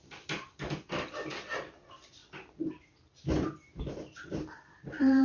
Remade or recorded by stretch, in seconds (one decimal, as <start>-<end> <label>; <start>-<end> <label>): 0.0-1.3 remade; 1.3-1.8 recorded; 1.8-5.2 remade